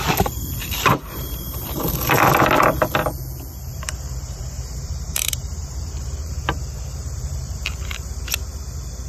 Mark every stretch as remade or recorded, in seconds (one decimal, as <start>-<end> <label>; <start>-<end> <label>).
0.0-0.6 recorded; 0.6-1.9 remade; 1.9-3.7 recorded; 3.7-8.1 remade; 8.1-9.1 recorded